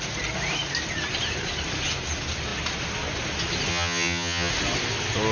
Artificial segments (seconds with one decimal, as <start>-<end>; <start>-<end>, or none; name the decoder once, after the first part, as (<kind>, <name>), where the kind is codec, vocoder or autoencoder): 3.7-4.5 (vocoder, HiFi-GAN)